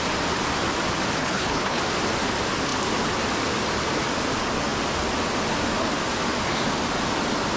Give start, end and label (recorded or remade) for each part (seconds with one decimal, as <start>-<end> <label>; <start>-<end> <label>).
0.0-1.2 recorded; 1.2-1.8 remade; 1.8-7.6 recorded